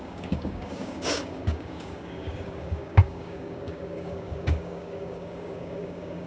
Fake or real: fake